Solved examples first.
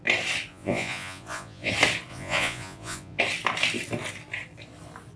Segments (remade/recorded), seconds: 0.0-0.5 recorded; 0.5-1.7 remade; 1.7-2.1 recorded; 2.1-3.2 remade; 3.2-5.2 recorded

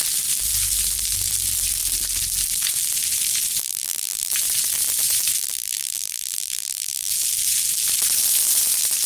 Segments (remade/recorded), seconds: 0.0-3.6 recorded; 3.6-4.3 remade; 4.3-5.4 recorded; 5.4-7.1 remade; 7.1-9.1 recorded

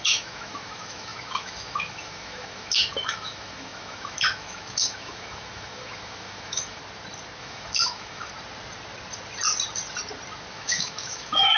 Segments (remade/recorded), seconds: 0.0-6.8 remade; 6.8-7.4 recorded; 7.4-8.3 remade; 8.3-10.5 recorded; 10.5-11.6 remade

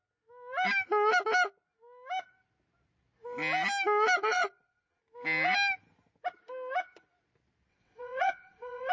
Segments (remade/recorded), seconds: 0.0-4.2 recorded; 4.2-5.0 remade; 5.0-7.7 recorded; 7.7-8.9 remade

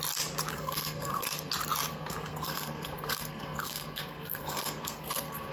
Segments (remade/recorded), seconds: 0.0-0.5 recorded; 0.5-1.5 remade; 1.5-1.9 recorded; 1.9-5.5 remade

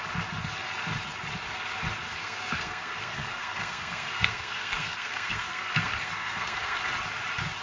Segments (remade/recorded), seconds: 0.0-2.2 recorded; 2.2-6.8 remade; 6.8-7.6 recorded

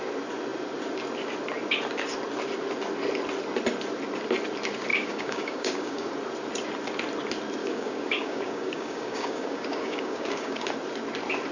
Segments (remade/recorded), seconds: 0.0-4.9 recorded; 4.9-6.1 remade; 6.1-7.6 recorded; 7.6-10.6 remade; 10.6-11.5 recorded